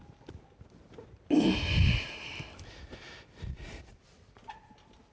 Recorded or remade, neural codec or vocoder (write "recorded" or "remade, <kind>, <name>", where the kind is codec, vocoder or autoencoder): recorded